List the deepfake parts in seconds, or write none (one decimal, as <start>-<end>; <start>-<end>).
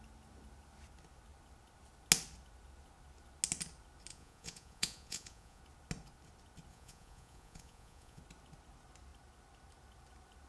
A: 4.1-5.6; 6.7-8.2